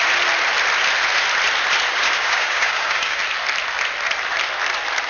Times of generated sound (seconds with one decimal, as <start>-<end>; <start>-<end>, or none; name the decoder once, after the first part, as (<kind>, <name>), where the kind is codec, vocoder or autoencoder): 1.9-3.2 (codec, DAC)